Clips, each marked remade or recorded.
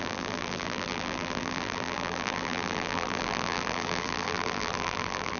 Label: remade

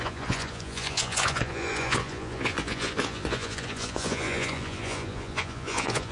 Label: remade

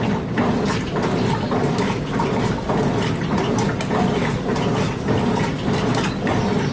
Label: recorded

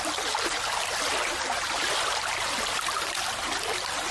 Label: recorded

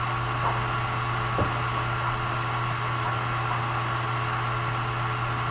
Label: recorded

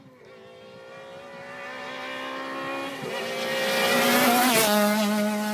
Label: recorded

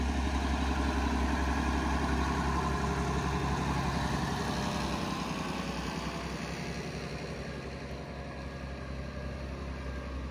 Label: recorded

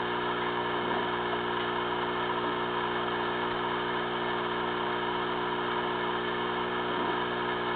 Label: recorded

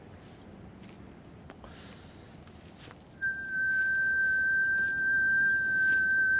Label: recorded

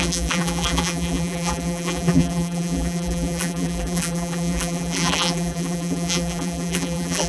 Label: remade